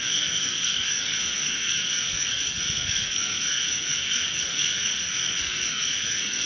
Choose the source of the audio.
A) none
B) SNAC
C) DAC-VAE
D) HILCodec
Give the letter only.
B